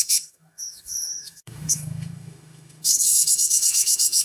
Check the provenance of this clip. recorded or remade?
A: remade